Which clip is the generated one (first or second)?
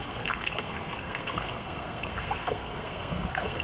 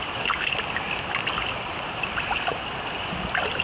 first